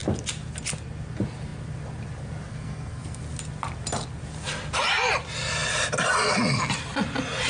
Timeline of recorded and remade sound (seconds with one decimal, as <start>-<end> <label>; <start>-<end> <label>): 0.0-2.5 recorded; 2.5-3.2 remade; 3.2-7.5 recorded